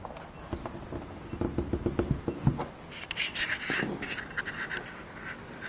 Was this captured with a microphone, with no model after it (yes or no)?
yes